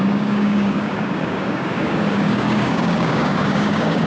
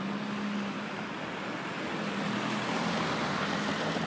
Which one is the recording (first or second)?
second